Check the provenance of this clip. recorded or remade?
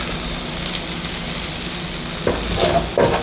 recorded